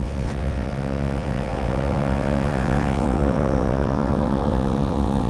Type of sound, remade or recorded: remade